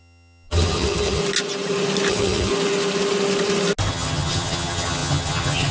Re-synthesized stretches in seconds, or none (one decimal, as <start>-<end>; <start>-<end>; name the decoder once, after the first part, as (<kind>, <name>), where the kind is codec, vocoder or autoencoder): 0.0-1.2 (vocoder, HiFi-GAN); 2.1-2.5; 3.9-5.7

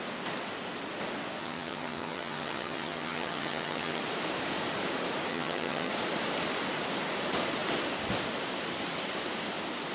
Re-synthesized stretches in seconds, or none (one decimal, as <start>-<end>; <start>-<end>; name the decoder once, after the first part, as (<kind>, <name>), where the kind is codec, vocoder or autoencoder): 1.4-4.0 (vocoder, HiFi-GAN); 5.3-5.9

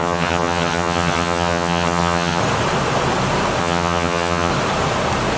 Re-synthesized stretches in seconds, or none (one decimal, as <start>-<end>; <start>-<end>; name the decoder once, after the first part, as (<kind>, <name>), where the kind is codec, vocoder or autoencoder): 0.0-2.4 (vocoder, HiFi-GAN); 3.6-4.5

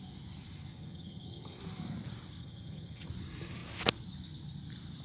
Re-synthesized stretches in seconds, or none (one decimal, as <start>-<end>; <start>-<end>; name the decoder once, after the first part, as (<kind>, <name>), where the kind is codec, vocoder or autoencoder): 0.7-1.6 (vocoder, HiFi-GAN); 2.4-3.1

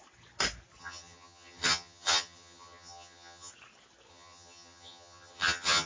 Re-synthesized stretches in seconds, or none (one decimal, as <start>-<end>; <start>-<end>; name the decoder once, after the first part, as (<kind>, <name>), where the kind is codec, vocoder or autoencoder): 0.8-3.5 (vocoder, HiFi-GAN); 4.1-5.9

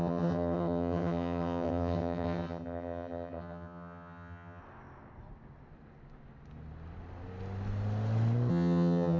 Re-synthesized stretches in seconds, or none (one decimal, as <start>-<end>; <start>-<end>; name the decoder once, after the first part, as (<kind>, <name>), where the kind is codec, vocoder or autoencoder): 0.0-4.6 (vocoder, HiFi-GAN); 8.5-9.2

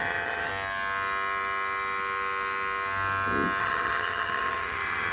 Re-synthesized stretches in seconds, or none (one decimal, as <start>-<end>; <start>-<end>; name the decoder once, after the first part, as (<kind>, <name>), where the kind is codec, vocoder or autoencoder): 0.0-0.5 (vocoder, HiFi-GAN); 3.6-5.1

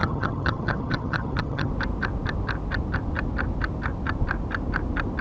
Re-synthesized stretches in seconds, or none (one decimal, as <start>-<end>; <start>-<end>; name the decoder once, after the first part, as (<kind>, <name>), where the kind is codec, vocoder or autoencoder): 0.0-1.7 (vocoder, HiFi-GAN)